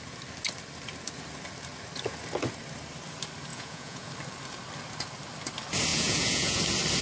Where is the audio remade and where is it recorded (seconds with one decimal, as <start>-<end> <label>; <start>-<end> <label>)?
0.0-3.5 recorded; 3.5-4.1 remade; 4.1-5.9 recorded; 5.9-6.6 remade; 6.6-7.0 recorded

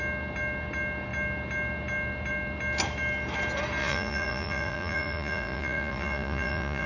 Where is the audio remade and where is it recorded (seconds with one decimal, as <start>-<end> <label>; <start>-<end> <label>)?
0.0-3.8 recorded; 3.8-6.9 remade

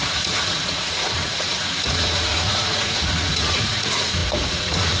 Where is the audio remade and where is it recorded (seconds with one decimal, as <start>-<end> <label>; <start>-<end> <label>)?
0.0-5.0 remade

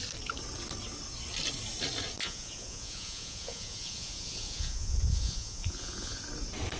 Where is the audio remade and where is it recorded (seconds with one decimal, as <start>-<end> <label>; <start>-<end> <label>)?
0.0-2.2 recorded; 2.2-6.2 remade; 6.2-6.8 recorded

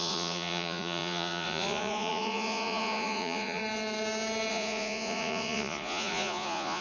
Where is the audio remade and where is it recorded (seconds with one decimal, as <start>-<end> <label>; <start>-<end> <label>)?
0.0-3.6 remade; 3.6-4.5 recorded; 4.5-6.8 remade

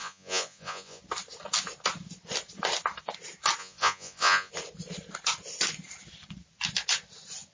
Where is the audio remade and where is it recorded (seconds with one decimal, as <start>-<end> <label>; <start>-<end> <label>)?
0.0-1.0 remade; 1.0-3.6 recorded; 3.6-4.5 remade; 4.5-7.5 recorded